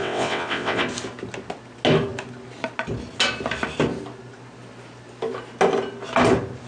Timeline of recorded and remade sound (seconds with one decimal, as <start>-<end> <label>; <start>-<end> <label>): 0.0-0.8 remade; 0.8-6.7 recorded